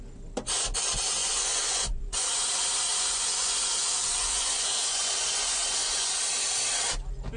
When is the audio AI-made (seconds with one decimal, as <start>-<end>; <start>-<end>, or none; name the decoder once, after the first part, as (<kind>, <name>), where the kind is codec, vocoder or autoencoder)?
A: 1.2-2.5 (vocoder, Vocos); 2.9-6.2